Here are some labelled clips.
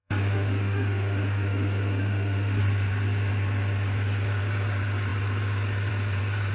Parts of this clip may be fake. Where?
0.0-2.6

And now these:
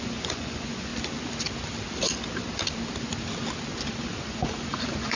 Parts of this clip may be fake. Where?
0.0-0.9; 4.0-5.2

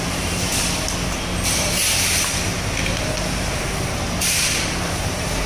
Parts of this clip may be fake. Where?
0.0-0.5; 2.0-2.5; 4.6-5.5

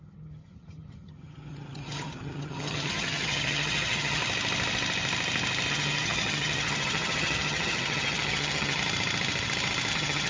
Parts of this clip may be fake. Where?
0.0-4.2; 5.7-8.8; 9.9-10.3